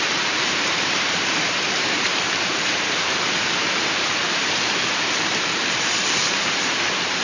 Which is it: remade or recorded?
remade